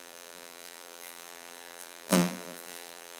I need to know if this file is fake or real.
fake